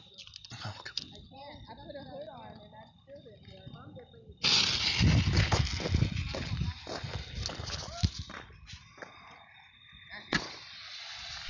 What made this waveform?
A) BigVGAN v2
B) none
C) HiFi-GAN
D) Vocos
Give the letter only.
B